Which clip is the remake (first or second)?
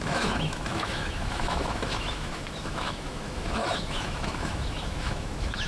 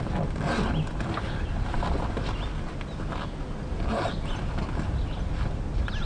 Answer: first